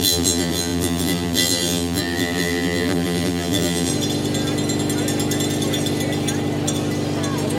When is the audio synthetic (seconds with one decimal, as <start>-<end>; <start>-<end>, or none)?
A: 0.0-3.9